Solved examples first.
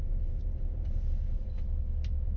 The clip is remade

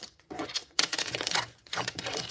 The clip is remade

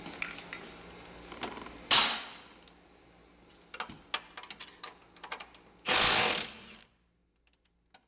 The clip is recorded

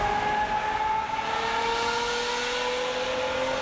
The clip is recorded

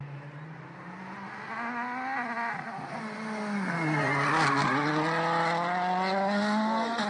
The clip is recorded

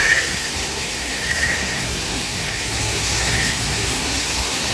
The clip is remade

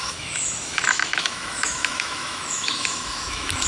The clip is remade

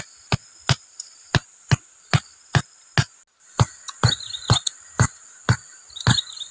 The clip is recorded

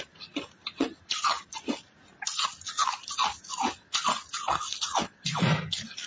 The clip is recorded